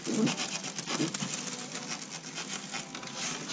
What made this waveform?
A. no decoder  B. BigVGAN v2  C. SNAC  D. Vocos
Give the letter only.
A